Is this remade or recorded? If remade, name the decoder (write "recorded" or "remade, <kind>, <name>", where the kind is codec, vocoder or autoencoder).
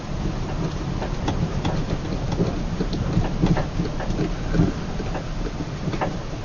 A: recorded